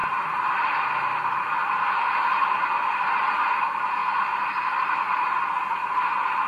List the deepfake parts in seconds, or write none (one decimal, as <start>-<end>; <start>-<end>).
0.0-0.5; 1.6-3.0; 5.1-6.5